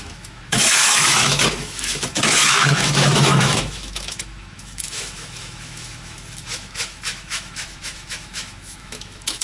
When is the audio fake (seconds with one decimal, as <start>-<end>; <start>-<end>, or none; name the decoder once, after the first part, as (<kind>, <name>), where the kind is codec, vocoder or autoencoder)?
0.0-9.4 (autoencoder, DAC-VAE)